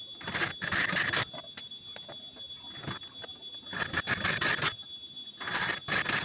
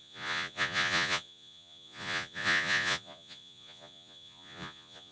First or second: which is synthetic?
second